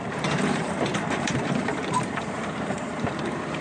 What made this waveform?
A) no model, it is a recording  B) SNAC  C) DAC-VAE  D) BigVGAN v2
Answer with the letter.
D